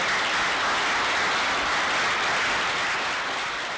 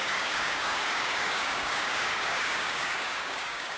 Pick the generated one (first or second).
second